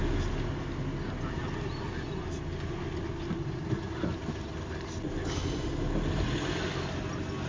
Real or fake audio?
real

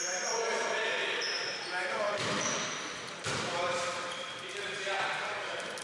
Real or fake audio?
fake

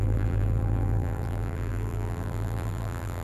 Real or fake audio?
fake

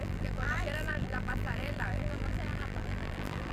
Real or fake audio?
fake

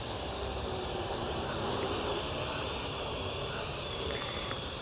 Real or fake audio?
fake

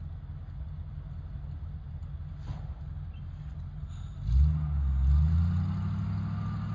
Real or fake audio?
real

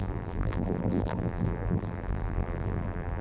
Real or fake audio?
fake